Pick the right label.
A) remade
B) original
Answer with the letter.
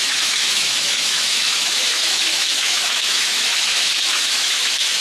A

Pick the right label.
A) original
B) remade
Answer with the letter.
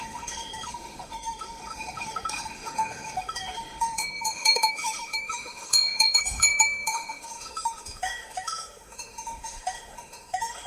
B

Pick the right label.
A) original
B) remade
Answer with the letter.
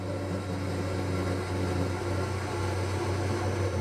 A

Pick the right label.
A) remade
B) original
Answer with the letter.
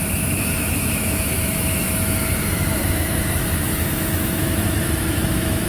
A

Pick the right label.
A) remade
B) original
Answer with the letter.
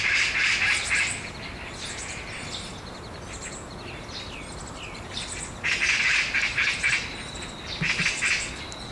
B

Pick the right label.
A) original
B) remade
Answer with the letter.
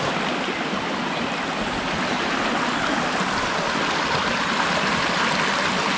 A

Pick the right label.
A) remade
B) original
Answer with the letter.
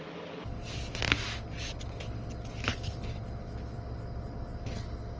B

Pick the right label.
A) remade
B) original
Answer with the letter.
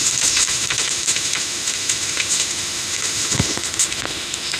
A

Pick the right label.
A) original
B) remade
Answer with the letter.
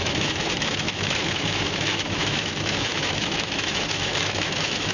B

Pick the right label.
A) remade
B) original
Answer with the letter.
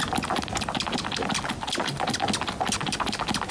B